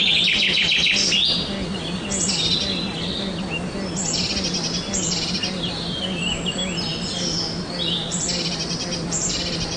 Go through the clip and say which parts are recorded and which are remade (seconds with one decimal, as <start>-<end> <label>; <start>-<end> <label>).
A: 0.0-9.8 recorded